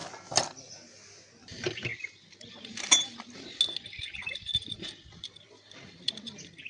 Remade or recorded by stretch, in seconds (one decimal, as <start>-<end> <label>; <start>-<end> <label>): 0.0-6.7 recorded